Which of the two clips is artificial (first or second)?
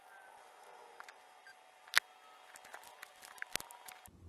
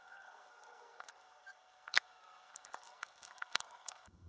second